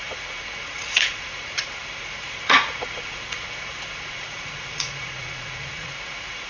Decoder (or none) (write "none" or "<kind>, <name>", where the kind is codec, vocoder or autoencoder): vocoder, Vocos